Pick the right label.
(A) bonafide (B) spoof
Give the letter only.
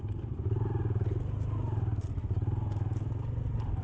A